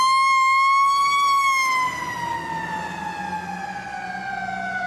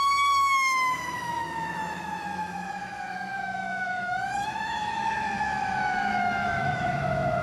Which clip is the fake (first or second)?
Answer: second